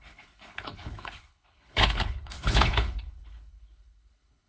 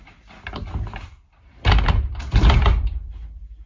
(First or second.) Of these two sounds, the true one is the second